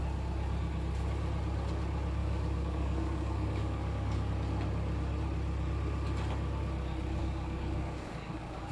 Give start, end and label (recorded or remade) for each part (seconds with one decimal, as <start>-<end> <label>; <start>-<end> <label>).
0.0-2.2 recorded; 2.2-4.3 remade; 4.3-7.2 recorded; 7.2-8.7 remade